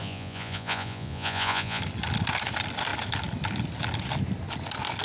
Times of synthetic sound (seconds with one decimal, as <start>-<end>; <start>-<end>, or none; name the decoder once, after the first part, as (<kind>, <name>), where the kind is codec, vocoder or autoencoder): 0.0-1.8 (vocoder, Vocos)